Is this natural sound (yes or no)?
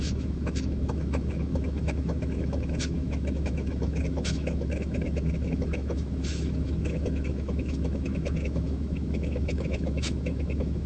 no